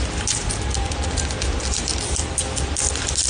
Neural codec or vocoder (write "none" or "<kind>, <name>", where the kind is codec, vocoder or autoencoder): none